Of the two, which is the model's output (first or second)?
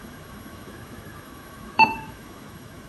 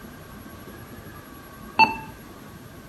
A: first